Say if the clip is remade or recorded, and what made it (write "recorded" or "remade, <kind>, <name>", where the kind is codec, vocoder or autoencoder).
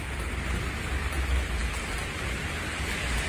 recorded